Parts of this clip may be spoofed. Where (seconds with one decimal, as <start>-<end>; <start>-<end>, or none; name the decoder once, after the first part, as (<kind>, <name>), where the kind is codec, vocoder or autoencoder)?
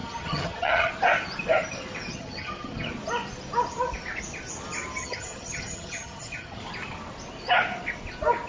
0.0-0.9 (vocoder, HiFi-GAN); 2.1-2.9; 5.0-6.6